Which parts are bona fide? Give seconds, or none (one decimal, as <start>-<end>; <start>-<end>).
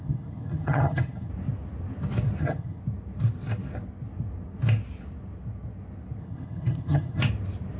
1.3-2.4; 2.8-6.2; 7.2-7.8